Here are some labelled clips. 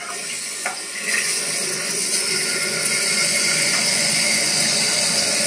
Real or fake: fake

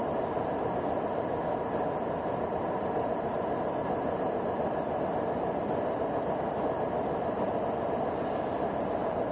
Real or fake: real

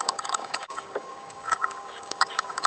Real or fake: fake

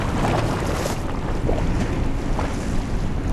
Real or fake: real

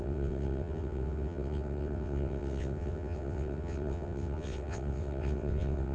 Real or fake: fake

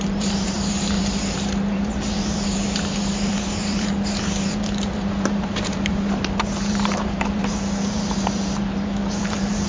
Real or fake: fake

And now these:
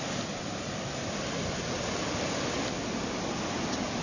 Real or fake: real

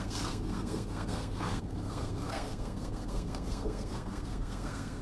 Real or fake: fake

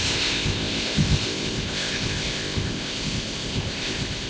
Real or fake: fake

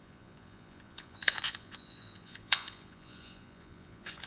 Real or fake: fake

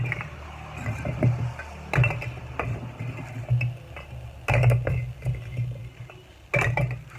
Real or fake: real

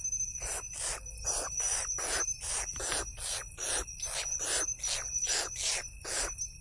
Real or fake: real